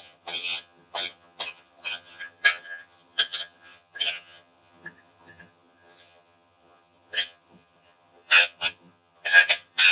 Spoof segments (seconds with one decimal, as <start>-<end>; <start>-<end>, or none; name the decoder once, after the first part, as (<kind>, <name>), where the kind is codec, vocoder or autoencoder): 0.0-9.9 (vocoder, HiFi-GAN)